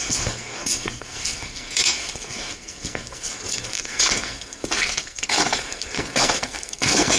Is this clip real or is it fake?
fake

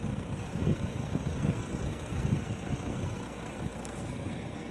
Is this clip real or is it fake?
fake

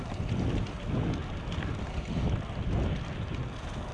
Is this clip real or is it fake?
real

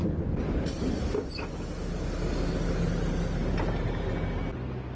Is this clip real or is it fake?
real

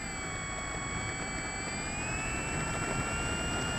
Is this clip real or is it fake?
real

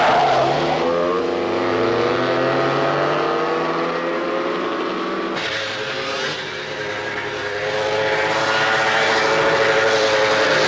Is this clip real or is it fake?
real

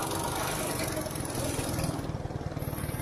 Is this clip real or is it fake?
real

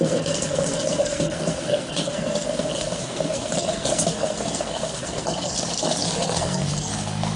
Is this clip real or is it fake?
fake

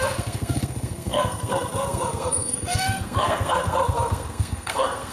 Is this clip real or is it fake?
fake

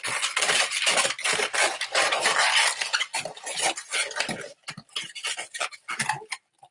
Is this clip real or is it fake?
real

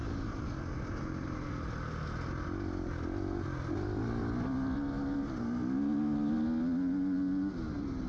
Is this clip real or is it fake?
real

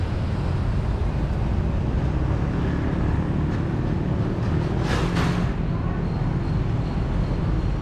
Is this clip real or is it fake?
real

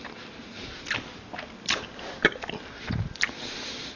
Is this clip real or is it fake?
real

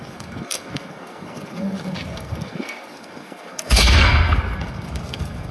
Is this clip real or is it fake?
fake